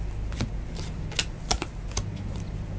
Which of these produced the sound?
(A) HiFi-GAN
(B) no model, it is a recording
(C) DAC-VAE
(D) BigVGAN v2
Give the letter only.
B